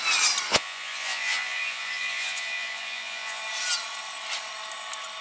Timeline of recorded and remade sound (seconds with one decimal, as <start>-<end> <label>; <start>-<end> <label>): 0.0-0.5 recorded; 0.5-3.4 remade; 3.4-5.2 recorded